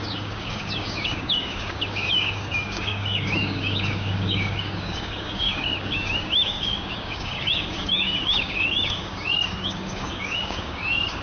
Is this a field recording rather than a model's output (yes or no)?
no